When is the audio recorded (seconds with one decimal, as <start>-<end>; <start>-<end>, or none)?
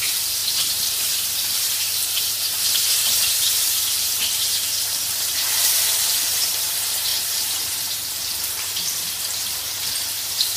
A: none